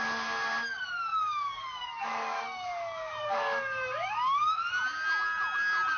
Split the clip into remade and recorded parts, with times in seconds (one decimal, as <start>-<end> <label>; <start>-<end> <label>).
0.0-1.1 recorded; 1.1-4.7 remade; 4.7-6.0 recorded